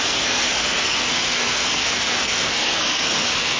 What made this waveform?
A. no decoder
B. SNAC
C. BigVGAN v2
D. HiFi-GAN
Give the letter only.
B